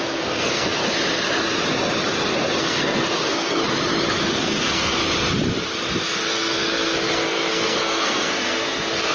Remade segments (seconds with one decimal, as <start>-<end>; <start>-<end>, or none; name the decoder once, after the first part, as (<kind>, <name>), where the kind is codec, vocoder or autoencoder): 0.0-0.8 (codec, SNAC); 2.6-3.6; 4.3-5.0; 6.0-9.1

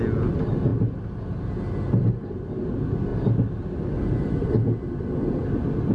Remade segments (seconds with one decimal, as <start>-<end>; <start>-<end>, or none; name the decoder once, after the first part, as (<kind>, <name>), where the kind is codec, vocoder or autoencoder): none